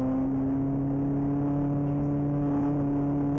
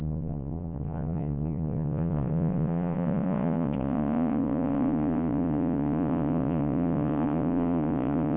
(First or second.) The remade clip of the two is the second